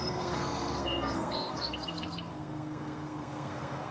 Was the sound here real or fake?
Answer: fake